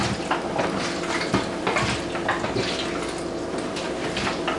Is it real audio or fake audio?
real